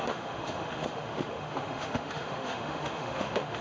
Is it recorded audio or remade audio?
remade